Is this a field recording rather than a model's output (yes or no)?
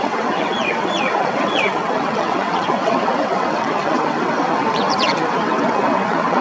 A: no